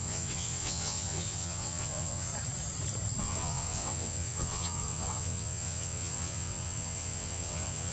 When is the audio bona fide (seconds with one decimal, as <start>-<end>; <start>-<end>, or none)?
2.3-3.2